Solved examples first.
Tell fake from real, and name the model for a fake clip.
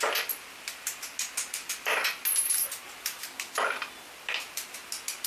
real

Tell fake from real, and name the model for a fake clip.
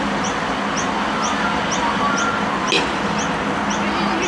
real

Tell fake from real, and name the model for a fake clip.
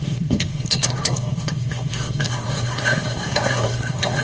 fake, codec, SNAC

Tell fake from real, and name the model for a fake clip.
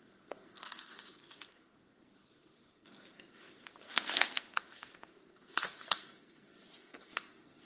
fake, codec, SNAC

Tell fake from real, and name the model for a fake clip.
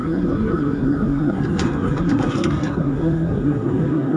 fake, codec, SNAC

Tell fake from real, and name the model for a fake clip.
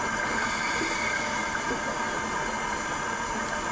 real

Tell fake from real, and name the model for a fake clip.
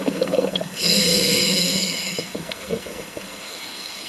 fake, codec, SNAC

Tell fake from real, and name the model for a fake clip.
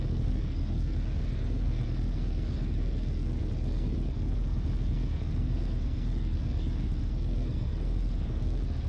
fake, codec, SNAC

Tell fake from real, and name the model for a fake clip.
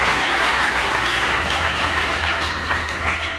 fake, codec, SNAC